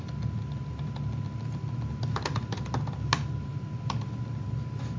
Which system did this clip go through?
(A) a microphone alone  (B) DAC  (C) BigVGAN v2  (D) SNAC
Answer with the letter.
A